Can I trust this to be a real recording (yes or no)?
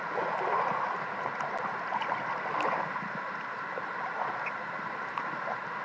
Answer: yes